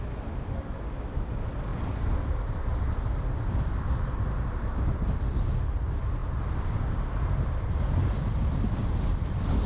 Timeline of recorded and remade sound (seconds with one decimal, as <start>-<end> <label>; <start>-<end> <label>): 0.0-1.7 recorded; 1.7-4.2 remade; 4.2-6.2 recorded; 6.2-9.7 remade